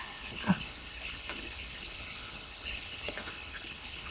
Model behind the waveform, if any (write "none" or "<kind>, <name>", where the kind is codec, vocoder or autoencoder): codec, HILCodec